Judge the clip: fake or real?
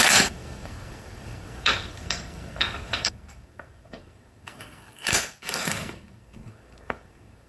fake